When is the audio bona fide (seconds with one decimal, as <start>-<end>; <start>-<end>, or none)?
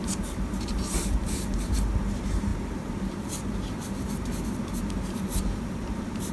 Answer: none